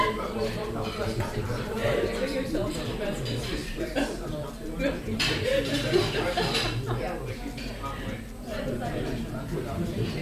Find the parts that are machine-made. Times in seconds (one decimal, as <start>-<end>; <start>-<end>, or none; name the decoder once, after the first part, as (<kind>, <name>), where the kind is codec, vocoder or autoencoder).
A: 0.0-5.5 (vocoder, BigVGAN v2); 8.4-10.2